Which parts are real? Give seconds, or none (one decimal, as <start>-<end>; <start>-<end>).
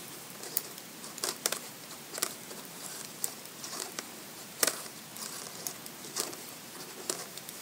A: 5.1-6.1